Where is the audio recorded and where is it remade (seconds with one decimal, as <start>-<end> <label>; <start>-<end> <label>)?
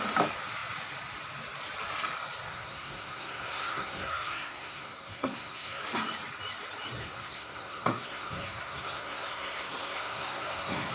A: 0.0-2.5 recorded; 2.5-5.8 remade; 5.8-7.0 recorded; 7.0-10.9 remade